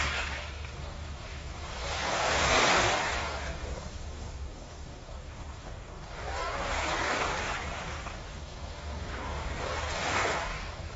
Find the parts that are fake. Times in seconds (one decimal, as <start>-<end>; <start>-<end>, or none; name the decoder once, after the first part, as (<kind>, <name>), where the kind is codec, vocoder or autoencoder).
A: 0.0-11.0 (codec, DAC)